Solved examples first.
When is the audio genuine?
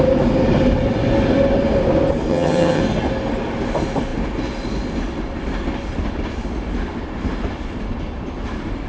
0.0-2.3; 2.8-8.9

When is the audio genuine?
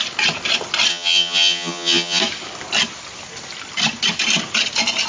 0.0-0.9; 2.2-5.1